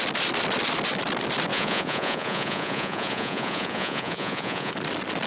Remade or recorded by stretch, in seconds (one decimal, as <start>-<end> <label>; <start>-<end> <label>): 0.0-1.5 recorded; 1.5-4.7 remade; 4.7-5.3 recorded